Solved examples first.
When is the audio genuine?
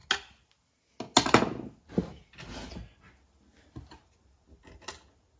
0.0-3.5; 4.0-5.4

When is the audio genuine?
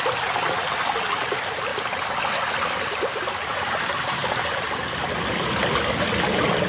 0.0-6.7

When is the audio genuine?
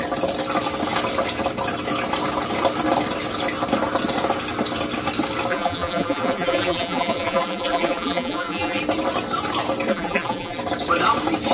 0.0-5.5; 8.8-9.9; 10.6-11.5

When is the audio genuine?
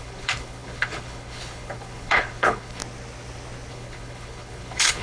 2.8-3.7